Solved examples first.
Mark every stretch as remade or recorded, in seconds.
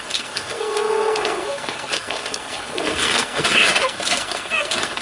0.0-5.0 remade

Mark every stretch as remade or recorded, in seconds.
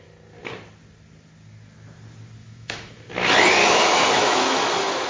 0.0-2.4 recorded; 2.4-3.1 remade; 3.1-3.6 recorded; 3.6-4.6 remade; 4.6-5.1 recorded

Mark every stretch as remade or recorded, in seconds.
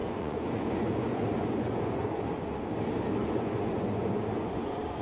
0.0-2.2 remade; 2.2-3.2 recorded; 3.2-5.0 remade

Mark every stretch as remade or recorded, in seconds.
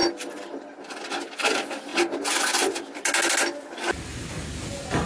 0.0-5.1 recorded